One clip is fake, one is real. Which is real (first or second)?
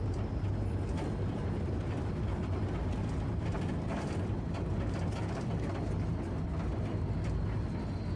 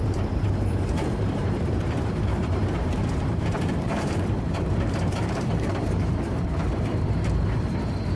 first